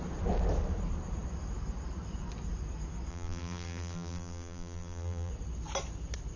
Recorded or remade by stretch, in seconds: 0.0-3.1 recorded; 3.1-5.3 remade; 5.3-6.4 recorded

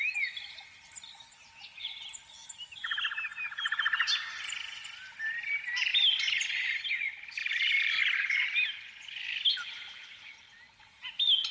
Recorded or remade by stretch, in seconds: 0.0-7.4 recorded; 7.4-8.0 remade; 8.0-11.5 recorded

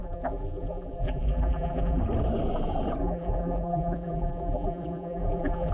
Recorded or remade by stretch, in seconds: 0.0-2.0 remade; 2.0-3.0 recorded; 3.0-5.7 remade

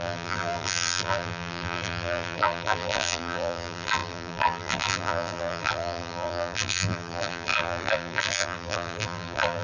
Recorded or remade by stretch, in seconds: 0.0-9.6 remade

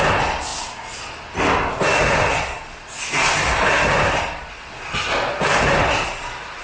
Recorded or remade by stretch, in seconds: 0.0-6.6 recorded

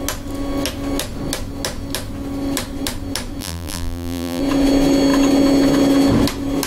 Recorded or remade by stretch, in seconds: 0.0-3.4 recorded; 3.4-4.4 remade; 4.4-6.7 recorded